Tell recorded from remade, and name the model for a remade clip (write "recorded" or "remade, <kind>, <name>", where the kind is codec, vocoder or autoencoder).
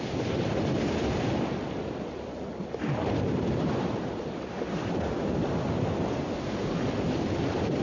recorded